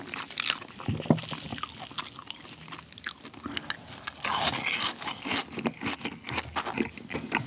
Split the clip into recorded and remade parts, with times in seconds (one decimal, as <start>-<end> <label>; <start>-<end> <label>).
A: 0.0-7.5 recorded